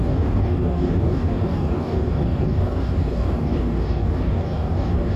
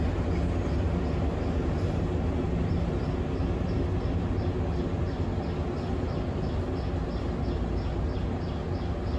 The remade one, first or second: first